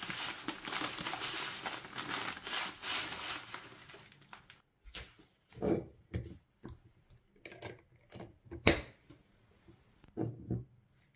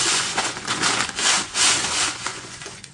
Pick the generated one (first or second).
second